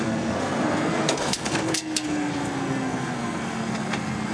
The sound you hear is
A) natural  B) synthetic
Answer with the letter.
B